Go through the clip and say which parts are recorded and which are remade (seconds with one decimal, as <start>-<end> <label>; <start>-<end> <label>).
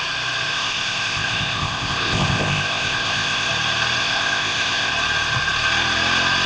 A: 0.0-0.5 recorded; 0.5-3.5 remade; 3.5-4.0 recorded; 4.0-4.9 remade; 4.9-6.5 recorded